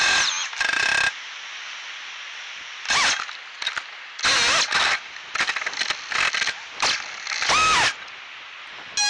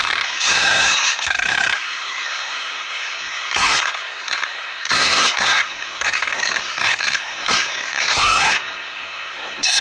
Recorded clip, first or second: first